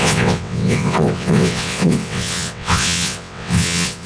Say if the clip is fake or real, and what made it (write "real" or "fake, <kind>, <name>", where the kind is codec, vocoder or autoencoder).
fake, vocoder, WaveNeXt